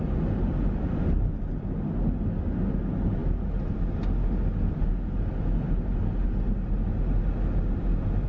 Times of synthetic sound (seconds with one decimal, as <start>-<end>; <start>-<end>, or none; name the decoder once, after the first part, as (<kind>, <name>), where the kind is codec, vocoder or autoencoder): none